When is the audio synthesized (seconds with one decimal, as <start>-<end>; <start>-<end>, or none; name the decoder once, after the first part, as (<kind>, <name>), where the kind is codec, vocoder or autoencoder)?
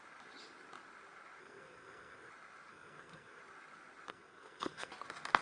1.4-2.3 (codec, SNAC); 2.7-3.4; 4.1-4.9